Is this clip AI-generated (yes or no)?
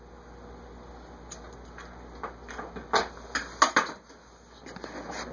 no